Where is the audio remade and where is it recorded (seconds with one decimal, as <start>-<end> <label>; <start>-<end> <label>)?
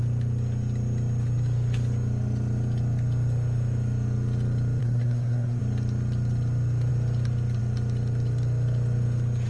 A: 0.0-4.8 recorded; 4.8-5.6 remade; 5.6-9.5 recorded